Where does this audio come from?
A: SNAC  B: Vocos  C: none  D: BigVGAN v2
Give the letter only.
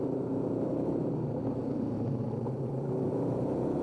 D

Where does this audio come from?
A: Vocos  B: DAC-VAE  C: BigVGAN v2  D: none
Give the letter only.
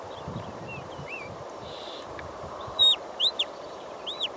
C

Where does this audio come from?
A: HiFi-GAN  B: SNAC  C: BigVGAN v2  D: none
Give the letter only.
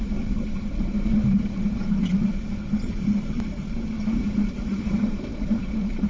C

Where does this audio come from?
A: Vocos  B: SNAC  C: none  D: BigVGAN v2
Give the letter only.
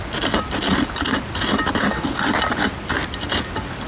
C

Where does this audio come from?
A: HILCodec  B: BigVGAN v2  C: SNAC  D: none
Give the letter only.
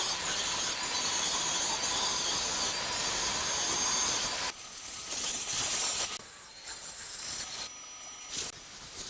D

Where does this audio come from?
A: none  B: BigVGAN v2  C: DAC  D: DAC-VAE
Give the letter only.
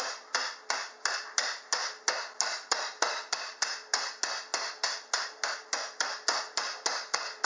A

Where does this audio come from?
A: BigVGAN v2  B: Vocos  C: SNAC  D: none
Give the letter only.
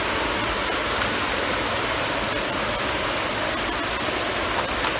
D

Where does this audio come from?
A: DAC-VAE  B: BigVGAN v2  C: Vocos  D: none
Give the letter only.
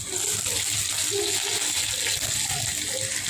D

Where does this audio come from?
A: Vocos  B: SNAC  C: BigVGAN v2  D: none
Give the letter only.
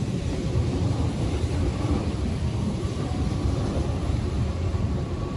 C